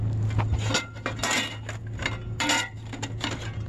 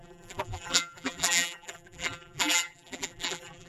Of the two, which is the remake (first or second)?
second